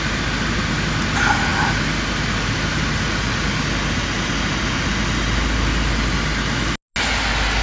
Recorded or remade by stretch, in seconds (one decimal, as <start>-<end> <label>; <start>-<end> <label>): 0.0-7.6 recorded